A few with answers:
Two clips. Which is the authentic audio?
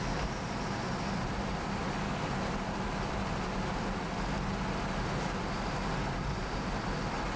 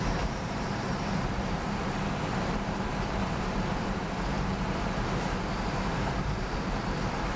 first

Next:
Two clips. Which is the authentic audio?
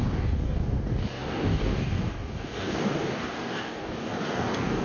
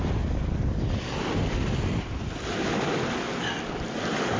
second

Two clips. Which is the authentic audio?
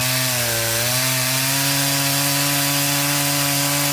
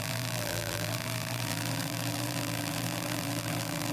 first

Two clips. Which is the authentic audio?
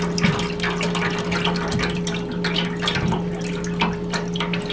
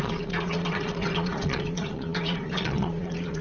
first